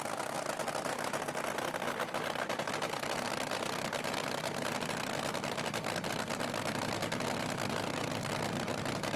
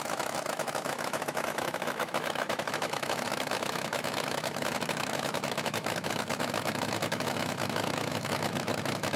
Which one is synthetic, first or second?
second